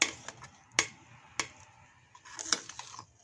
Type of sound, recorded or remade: recorded